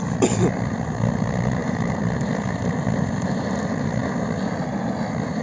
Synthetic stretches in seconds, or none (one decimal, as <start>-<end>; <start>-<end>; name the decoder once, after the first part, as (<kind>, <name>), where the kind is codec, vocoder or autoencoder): 1.6-2.6 (vocoder, BigVGAN v2)